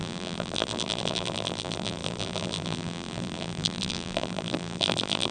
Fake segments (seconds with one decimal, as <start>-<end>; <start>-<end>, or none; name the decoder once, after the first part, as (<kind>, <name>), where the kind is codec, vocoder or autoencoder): 0.0-5.3 (vocoder, BigVGAN v2)